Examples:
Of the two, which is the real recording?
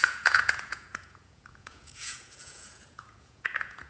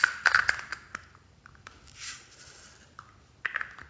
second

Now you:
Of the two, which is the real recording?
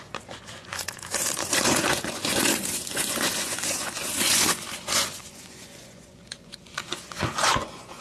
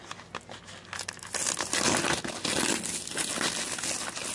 second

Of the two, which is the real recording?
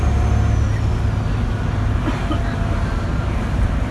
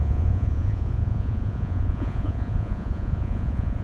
first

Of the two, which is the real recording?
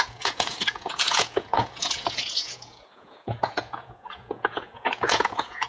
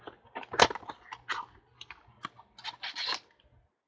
second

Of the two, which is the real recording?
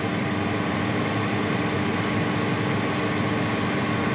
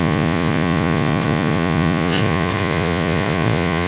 first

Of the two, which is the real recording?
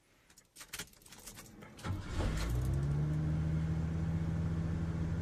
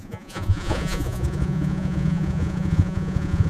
first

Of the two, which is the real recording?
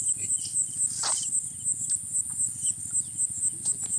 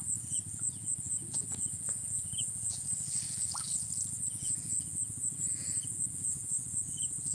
first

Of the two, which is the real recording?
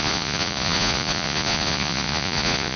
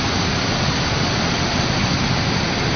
second